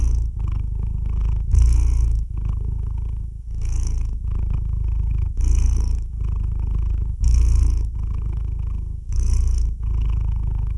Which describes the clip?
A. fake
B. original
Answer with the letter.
A